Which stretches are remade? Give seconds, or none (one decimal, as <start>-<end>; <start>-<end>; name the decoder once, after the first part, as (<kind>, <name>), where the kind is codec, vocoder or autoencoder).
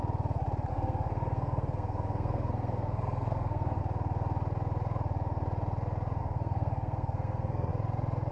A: 0.7-3.8 (codec, SNAC); 6.2-7.7